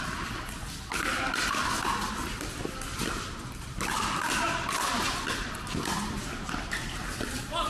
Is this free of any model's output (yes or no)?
yes